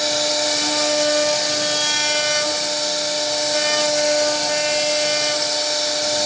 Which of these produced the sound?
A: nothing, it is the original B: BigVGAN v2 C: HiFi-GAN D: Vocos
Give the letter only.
A